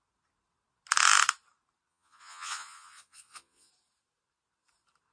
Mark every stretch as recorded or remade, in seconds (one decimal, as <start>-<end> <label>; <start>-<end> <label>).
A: 0.0-1.9 recorded; 1.9-3.7 remade; 3.7-5.1 recorded